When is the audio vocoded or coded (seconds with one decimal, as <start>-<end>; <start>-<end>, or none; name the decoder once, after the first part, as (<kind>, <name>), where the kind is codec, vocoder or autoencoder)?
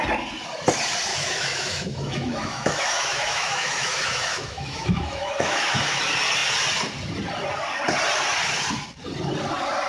1.1-6.0 (autoencoder, DAC-VAE)